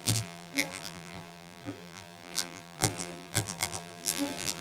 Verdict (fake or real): fake